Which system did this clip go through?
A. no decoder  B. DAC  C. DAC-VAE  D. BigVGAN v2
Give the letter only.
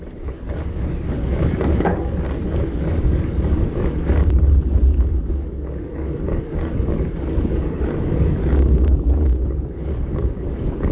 B